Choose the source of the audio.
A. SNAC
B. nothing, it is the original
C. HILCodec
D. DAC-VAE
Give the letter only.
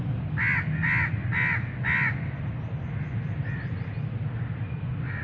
B